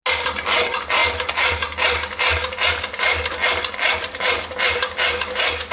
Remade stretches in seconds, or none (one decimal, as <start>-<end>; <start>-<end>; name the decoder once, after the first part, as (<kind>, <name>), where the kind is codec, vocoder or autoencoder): none